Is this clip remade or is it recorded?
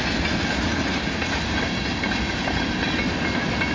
recorded